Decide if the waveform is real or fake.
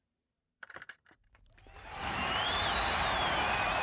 fake